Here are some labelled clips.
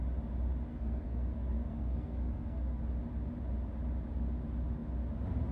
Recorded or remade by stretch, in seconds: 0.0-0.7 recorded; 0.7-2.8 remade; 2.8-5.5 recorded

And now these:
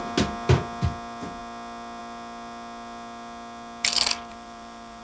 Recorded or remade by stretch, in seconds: 0.0-4.3 recorded; 4.3-5.0 remade

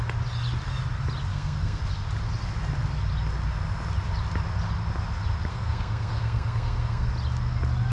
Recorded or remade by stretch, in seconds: 0.0-1.3 recorded; 1.3-1.8 remade; 1.8-5.5 recorded; 5.5-7.1 remade; 7.1-7.9 recorded

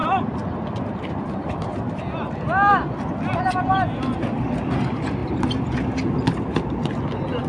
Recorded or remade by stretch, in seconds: 0.0-7.5 recorded

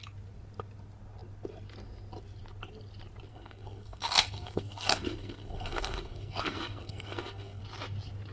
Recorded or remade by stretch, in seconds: 0.0-3.3 recorded; 3.3-7.6 remade; 7.6-8.3 recorded